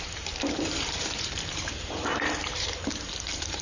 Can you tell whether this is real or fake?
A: fake